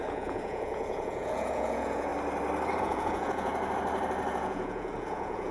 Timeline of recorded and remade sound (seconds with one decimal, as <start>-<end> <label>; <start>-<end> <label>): 0.0-2.1 remade; 2.1-2.8 recorded; 2.8-3.5 remade; 3.5-4.3 recorded; 4.3-5.5 remade